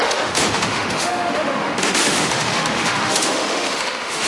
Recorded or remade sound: remade